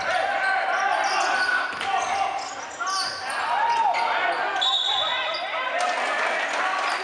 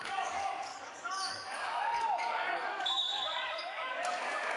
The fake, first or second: second